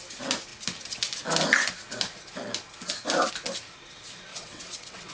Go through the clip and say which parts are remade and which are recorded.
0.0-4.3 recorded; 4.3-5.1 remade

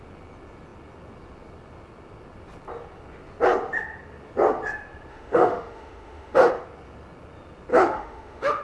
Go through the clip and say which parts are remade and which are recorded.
0.0-5.1 recorded; 5.1-6.5 remade; 6.5-7.7 recorded; 7.7-8.6 remade